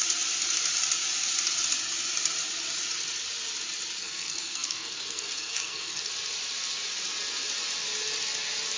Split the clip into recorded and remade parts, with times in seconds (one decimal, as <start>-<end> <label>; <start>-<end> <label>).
0.0-4.0 recorded; 4.0-6.1 remade; 6.1-8.8 recorded